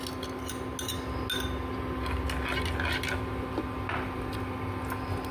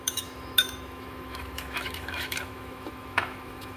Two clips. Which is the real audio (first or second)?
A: first